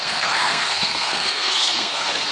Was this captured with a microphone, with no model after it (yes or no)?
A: no